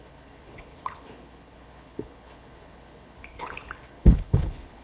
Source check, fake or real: fake